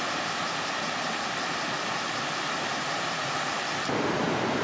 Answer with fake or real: fake